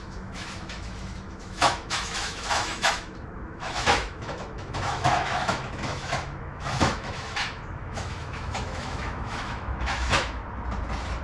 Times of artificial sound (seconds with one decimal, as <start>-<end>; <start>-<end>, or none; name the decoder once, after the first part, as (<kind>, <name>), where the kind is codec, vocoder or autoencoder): 0.0-10.4 (autoencoder, DAC-VAE)

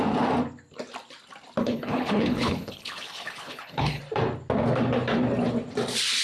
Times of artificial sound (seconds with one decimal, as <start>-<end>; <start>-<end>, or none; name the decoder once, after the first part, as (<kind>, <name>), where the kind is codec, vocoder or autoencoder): 1.6-4.0 (codec, HILCodec)

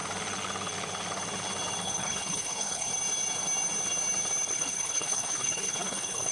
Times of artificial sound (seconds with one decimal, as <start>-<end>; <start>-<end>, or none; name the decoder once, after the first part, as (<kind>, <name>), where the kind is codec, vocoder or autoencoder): 1.8-2.9 (codec, HILCodec); 4.5-6.3

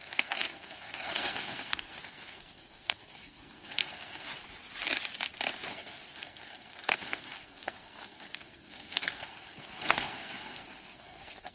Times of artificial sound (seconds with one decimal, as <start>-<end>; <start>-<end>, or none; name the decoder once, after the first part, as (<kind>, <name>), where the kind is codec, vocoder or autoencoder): 0.0-4.3 (codec, SNAC); 5.7-11.5

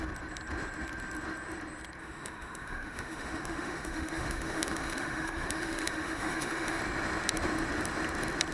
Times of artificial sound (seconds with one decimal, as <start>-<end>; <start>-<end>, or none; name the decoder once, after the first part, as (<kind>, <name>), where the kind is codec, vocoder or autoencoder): 2.0-6.8 (autoencoder, DAC-VAE)

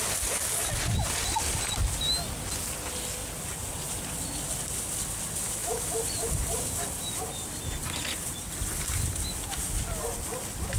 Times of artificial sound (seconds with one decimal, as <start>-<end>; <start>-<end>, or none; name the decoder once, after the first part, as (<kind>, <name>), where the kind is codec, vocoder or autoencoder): 5.6-9.3 (vocoder, BigVGAN v2)

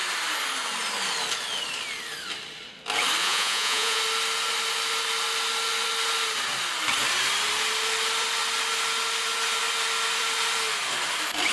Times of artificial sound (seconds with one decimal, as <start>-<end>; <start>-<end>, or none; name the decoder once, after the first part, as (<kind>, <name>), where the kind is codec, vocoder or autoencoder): 3.2-4.0 (vocoder, Vocos)

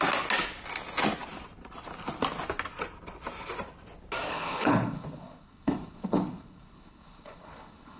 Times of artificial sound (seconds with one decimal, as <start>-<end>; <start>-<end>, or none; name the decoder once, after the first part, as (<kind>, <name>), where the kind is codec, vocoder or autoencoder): 4.3-8.0 (codec, HILCodec)